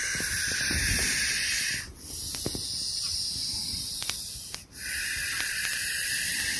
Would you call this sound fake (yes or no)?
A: yes